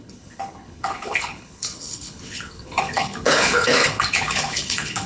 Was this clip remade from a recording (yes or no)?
yes